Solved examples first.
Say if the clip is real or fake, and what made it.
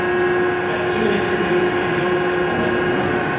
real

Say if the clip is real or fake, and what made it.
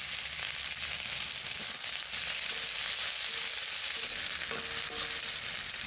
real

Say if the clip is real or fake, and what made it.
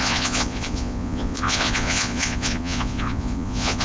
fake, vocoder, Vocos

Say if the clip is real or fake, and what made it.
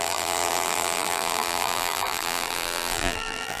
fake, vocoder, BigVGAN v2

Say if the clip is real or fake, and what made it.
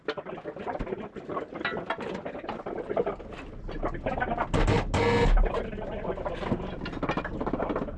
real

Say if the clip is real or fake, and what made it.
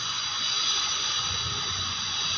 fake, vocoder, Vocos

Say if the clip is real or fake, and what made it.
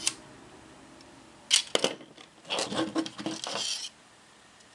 real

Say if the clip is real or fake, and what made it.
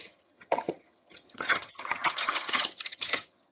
fake, vocoder, HiFi-GAN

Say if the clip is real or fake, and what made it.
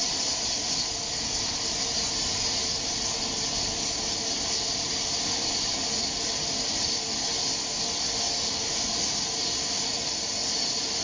real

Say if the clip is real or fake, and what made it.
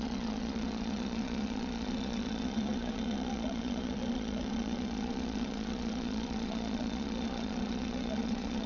fake, vocoder, Vocos